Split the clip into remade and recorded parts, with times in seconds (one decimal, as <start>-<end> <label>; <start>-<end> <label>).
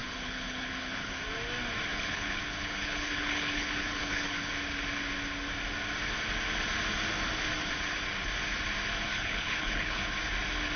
0.0-1.2 remade; 1.2-1.9 recorded; 1.9-4.5 remade; 4.5-9.1 recorded; 9.1-10.0 remade; 10.0-10.8 recorded